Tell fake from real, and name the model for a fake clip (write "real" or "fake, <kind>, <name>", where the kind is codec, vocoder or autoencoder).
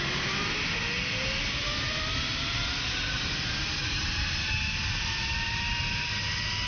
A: real